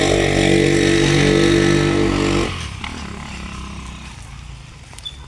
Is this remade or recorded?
recorded